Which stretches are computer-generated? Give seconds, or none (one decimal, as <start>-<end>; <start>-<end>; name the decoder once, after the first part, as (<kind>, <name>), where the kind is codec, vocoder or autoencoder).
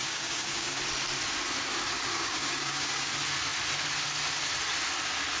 0.0-0.8 (codec, DAC); 2.1-3.1